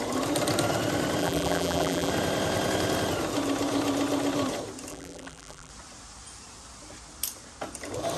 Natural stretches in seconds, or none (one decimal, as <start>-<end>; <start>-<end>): 0.0-1.2; 2.1-4.9; 5.7-8.2